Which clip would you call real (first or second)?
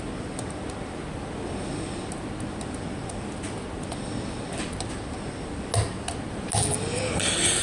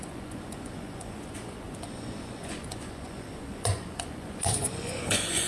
first